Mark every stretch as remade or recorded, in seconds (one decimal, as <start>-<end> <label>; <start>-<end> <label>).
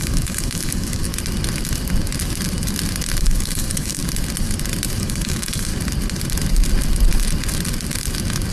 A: 0.0-1.1 remade; 1.1-3.2 recorded; 3.2-4.0 remade; 4.0-5.0 recorded; 5.0-5.7 remade; 5.7-8.5 recorded